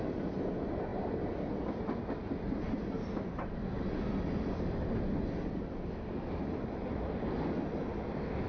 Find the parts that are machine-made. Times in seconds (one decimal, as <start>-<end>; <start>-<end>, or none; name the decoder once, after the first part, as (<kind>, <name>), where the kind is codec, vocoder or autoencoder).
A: none